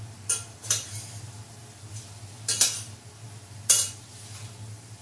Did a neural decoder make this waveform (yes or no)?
no